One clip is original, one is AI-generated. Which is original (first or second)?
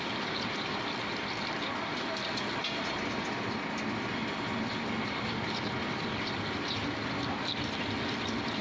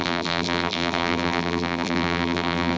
first